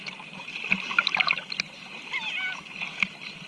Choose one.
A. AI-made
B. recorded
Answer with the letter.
B